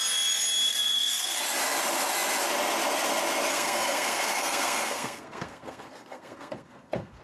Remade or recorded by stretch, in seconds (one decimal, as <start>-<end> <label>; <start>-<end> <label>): 0.0-0.7 recorded; 0.7-1.4 remade; 1.4-3.5 recorded; 3.5-7.2 remade